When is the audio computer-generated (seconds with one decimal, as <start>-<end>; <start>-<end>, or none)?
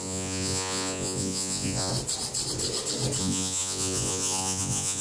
0.0-1.9; 3.2-5.0